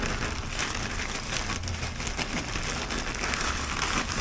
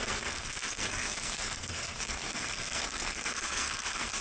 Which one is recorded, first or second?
first